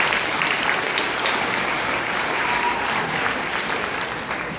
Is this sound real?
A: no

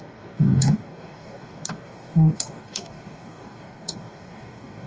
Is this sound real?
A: no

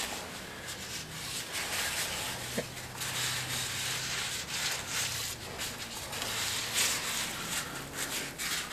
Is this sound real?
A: yes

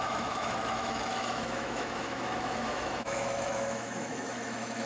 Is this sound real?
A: no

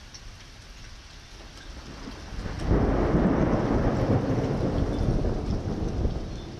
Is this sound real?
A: yes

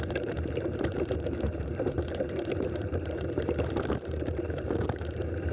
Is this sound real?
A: no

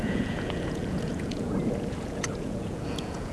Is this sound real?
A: no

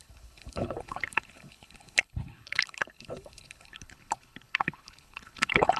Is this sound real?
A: no